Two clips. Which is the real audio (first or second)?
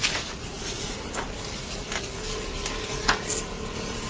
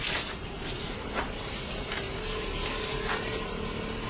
second